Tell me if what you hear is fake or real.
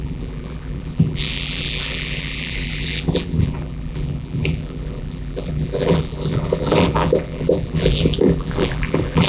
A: fake